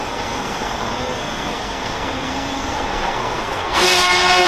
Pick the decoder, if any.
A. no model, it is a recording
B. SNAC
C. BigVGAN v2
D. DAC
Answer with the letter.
B